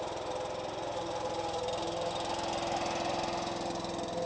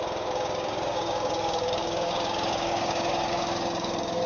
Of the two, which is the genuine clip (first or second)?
first